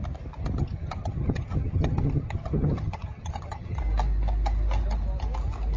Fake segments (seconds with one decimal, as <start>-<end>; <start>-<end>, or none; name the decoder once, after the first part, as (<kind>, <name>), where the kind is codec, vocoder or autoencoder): 0.6-3.8 (vocoder, HiFi-GAN)